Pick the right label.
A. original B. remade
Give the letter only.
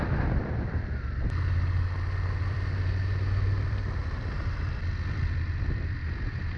B